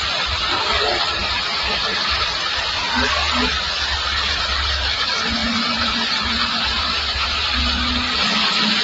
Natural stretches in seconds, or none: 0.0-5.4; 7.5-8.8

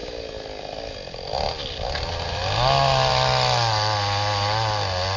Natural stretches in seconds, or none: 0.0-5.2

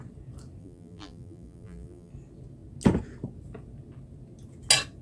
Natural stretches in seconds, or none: 0.0-0.6; 2.1-5.0

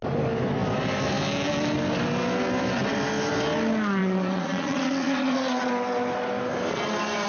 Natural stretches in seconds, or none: 0.0-4.0; 5.7-7.3

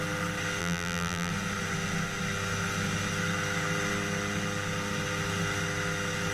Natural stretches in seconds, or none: 0.0-0.6; 1.3-6.3

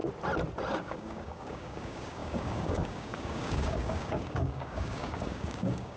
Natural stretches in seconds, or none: 0.0-0.7

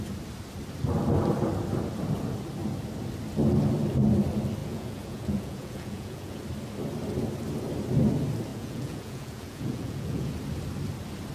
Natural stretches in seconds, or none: 0.0-4.6; 6.4-8.5; 10.3-11.3